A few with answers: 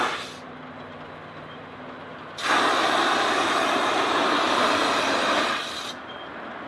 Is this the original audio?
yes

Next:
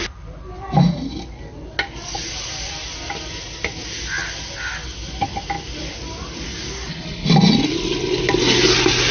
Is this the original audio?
yes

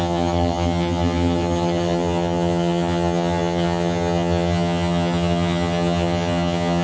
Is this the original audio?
no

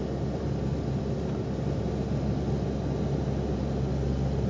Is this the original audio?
yes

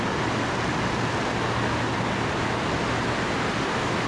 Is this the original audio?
yes